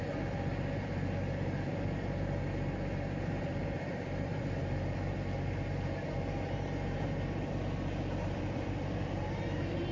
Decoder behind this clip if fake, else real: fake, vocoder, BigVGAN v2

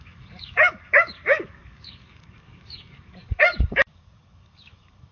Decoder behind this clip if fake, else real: fake, codec, DAC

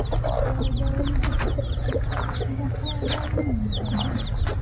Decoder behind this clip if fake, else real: real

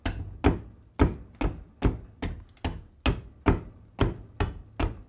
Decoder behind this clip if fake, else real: real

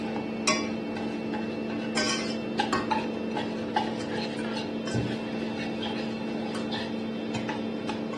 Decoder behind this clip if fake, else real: real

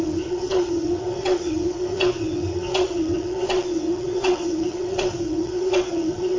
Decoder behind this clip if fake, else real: fake, vocoder, WaveNeXt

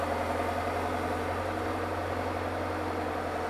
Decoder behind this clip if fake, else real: real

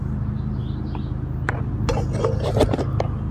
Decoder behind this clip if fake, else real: real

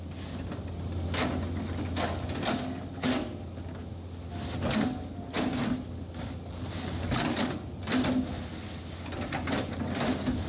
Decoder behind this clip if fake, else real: real